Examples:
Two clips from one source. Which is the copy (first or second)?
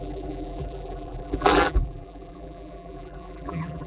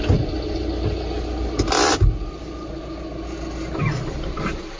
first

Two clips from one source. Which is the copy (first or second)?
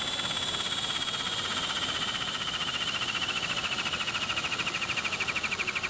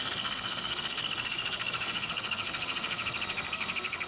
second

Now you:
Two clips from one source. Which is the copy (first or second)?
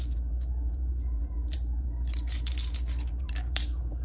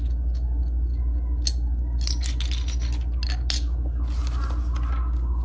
first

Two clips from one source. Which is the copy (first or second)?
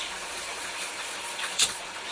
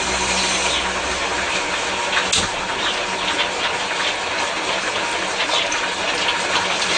first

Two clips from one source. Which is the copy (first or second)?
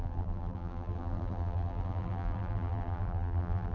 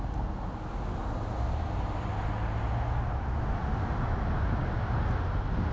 first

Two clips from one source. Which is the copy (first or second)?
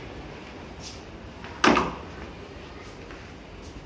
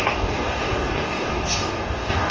second